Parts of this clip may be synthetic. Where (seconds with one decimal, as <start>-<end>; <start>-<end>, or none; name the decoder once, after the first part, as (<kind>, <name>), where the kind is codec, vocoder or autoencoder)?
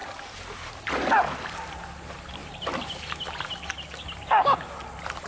none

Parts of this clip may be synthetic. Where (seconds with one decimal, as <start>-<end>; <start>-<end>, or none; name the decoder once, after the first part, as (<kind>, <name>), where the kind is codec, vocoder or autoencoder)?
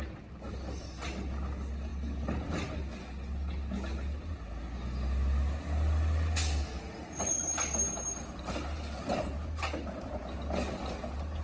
none